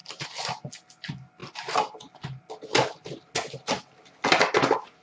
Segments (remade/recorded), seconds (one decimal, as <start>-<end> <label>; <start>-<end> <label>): 0.0-5.0 recorded